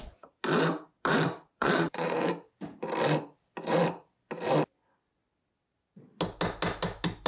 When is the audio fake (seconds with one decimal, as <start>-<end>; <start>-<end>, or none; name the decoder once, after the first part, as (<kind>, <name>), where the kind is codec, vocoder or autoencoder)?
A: 0.0-0.4 (vocoder, Vocos); 1.5-2.3; 5.6-6.1